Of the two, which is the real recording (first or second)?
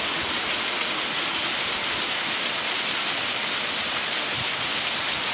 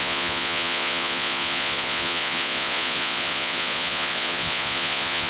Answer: first